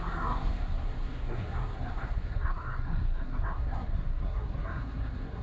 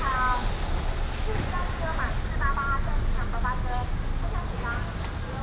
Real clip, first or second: second